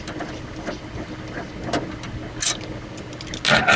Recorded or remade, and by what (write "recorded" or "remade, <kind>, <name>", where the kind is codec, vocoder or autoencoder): recorded